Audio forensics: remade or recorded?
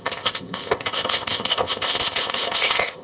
remade